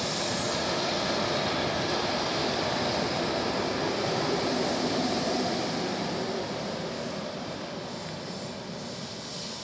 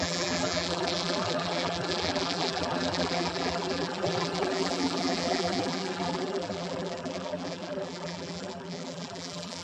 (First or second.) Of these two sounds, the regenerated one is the second